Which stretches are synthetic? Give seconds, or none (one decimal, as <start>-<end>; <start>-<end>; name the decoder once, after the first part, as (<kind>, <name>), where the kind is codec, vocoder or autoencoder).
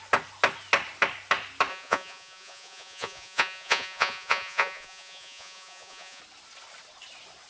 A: 1.7-6.2 (vocoder, Vocos)